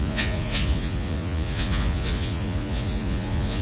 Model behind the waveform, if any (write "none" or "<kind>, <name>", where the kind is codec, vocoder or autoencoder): vocoder, Vocos